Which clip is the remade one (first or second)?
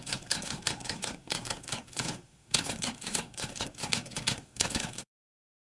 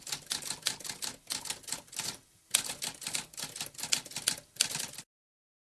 first